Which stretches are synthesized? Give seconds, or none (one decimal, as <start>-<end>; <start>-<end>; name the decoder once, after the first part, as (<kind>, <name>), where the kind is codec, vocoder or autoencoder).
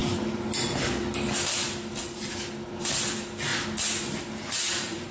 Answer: none